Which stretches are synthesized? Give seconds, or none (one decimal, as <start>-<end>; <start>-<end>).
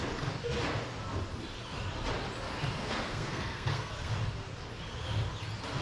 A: 2.8-4.1